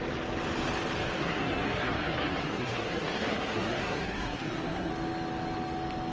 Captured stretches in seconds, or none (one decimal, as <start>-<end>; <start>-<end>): 0.0-1.2; 4.9-6.1